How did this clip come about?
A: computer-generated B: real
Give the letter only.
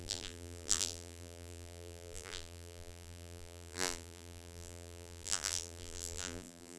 A